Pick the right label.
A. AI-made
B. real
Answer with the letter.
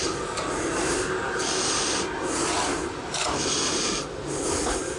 B